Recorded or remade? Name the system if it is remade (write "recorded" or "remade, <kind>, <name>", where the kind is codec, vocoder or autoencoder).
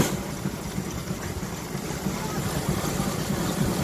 recorded